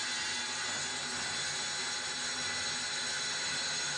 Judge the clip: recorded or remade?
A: recorded